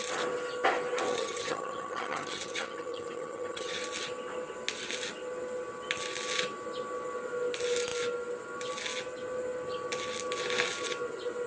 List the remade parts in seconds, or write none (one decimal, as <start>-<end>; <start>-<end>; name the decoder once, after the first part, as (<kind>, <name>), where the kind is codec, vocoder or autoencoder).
1.1-3.8 (vocoder, HiFi-GAN)